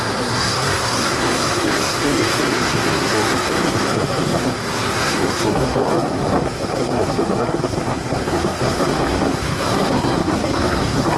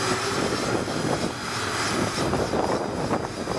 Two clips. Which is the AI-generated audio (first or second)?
first